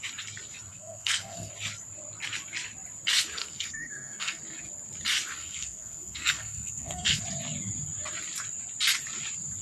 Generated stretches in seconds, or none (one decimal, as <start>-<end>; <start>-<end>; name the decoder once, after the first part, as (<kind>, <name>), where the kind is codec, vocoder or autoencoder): 0.7-1.5 (codec, SNAC); 3.4-4.4; 5.4-7.2